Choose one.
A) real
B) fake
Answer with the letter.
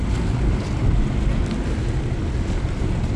A